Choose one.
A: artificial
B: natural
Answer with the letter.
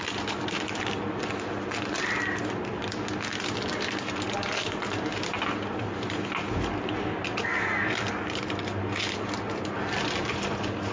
B